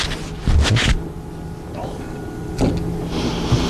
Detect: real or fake real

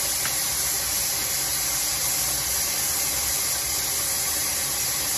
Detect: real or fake real